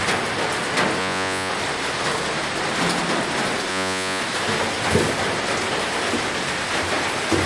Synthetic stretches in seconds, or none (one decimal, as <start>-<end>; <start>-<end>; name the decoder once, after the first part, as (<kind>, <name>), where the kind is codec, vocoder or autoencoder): 1.0-1.5 (vocoder, Vocos); 3.7-4.2